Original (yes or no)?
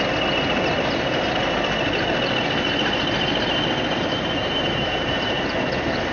yes